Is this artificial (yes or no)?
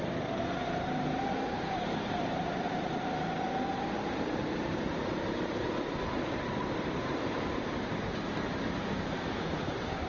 yes